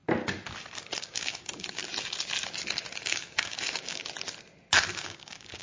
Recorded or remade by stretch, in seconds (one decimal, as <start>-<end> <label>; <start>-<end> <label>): 0.0-1.0 recorded; 1.0-1.8 remade; 1.8-3.0 recorded; 3.0-4.0 remade; 4.0-4.9 recorded; 4.9-5.6 remade